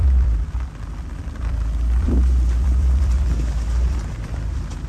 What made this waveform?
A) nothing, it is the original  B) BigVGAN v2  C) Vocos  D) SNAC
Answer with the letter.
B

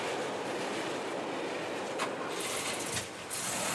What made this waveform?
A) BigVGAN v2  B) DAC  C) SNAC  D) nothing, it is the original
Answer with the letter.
D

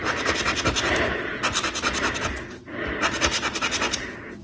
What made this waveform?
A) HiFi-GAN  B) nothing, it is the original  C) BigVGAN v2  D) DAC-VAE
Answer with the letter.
B